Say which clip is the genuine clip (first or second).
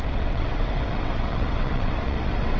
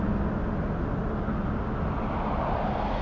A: second